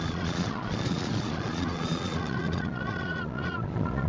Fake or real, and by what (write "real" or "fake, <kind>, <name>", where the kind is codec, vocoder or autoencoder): fake, vocoder, Vocos